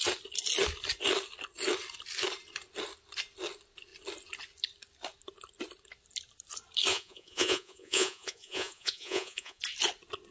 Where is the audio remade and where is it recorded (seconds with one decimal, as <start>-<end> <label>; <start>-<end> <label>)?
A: 0.0-6.9 recorded; 6.9-9.6 remade; 9.6-10.3 recorded

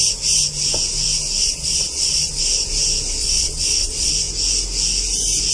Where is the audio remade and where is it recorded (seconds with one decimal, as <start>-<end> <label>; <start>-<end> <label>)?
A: 0.0-1.4 recorded; 1.4-2.4 remade; 2.4-3.2 recorded; 3.2-4.1 remade; 4.1-5.5 recorded